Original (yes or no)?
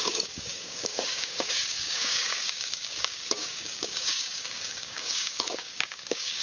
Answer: no